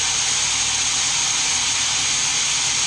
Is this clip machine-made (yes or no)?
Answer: no